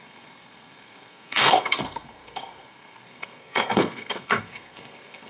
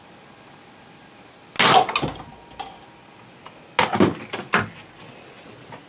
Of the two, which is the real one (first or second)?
second